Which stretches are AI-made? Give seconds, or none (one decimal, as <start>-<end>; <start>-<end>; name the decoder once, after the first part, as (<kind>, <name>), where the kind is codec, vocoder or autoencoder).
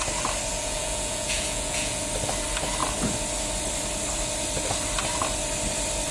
0.5-2.1 (vocoder, Vocos)